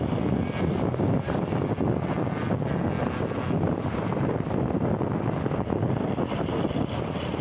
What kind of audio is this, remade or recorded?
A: recorded